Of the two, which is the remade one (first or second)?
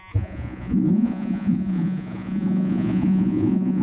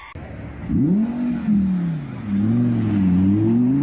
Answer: first